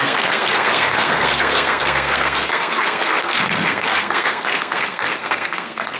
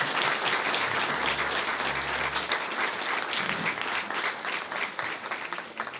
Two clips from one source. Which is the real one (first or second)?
second